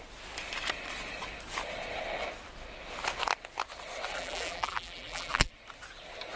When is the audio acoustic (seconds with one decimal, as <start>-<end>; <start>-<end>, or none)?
0.0-4.1; 5.5-6.4